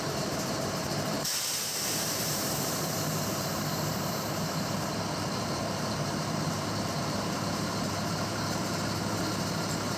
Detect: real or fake fake